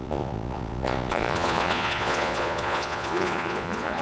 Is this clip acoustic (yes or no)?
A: no